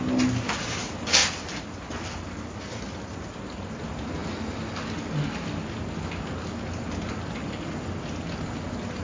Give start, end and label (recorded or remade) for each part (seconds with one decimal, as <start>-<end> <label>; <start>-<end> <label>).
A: 0.0-9.0 recorded